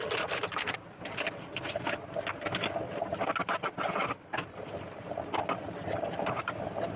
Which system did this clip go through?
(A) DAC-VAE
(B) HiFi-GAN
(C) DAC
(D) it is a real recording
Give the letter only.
D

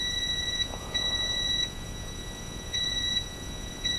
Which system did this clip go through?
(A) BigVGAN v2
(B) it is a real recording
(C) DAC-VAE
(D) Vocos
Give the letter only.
D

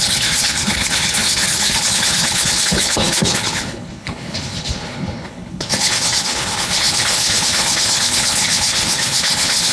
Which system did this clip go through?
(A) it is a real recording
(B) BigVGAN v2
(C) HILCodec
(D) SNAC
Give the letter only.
C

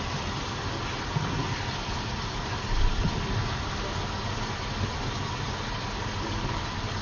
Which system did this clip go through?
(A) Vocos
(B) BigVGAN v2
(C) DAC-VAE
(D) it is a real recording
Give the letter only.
D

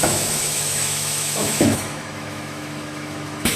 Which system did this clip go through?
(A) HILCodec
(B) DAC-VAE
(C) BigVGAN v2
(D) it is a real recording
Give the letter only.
B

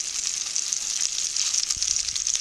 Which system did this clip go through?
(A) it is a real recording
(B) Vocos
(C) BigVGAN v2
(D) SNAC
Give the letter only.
A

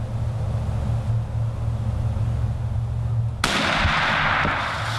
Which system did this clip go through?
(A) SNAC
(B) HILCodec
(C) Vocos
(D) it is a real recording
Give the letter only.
D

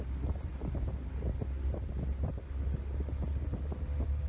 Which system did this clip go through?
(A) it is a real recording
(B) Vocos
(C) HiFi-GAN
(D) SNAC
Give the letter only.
A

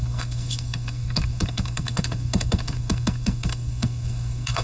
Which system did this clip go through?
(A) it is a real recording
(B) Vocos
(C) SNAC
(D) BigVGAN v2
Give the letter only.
C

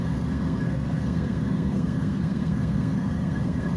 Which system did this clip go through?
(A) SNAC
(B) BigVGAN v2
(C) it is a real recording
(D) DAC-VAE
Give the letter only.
A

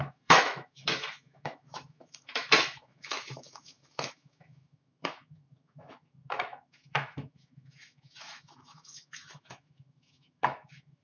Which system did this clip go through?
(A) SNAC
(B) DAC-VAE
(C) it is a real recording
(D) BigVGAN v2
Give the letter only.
B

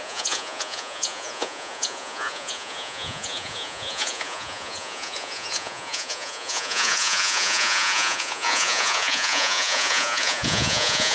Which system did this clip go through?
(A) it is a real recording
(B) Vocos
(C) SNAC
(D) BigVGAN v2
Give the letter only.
B